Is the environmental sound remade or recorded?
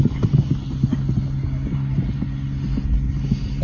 recorded